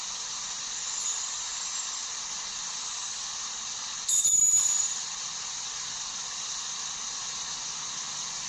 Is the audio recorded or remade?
recorded